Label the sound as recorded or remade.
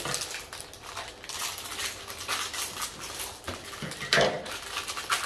recorded